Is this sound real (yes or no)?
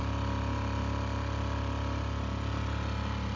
yes